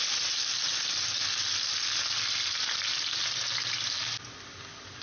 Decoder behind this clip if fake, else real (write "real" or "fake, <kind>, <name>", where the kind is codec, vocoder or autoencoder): real